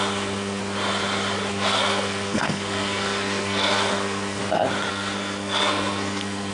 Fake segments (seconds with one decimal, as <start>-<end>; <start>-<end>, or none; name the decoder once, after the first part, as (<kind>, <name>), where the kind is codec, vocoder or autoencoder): 0.0-0.6 (codec, SNAC); 1.5-4.4; 4.9-6.5